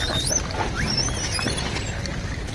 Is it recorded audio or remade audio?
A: recorded